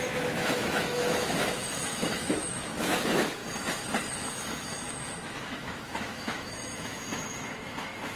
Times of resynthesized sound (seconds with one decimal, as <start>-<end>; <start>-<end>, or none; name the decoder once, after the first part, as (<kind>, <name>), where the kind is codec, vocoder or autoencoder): 0.0-3.4 (autoencoder, DAC-VAE); 4.1-8.2